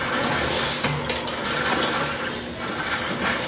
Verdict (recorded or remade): recorded